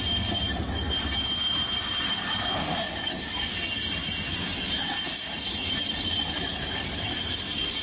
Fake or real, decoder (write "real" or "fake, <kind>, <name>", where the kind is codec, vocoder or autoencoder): real